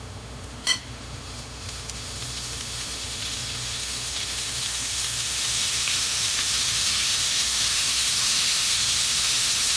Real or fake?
fake